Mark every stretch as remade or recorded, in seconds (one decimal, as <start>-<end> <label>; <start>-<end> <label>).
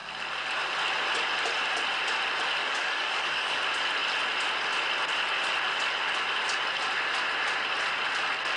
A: 0.0-2.6 recorded; 2.6-3.6 remade; 3.6-8.6 recorded